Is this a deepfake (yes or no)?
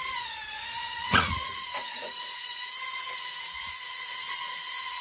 yes